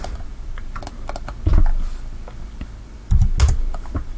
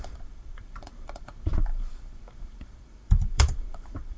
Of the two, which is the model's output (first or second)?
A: second